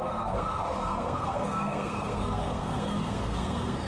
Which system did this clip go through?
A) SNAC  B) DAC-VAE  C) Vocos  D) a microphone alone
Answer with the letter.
A